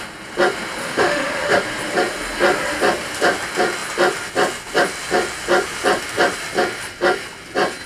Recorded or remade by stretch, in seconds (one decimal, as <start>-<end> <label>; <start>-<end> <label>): 0.0-0.8 recorded; 0.8-1.6 remade; 1.6-7.9 recorded